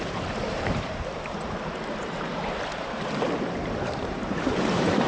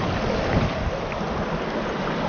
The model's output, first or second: first